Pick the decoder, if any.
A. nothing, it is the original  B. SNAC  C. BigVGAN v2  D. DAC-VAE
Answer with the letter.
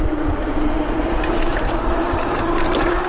A